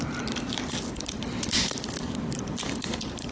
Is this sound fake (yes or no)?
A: yes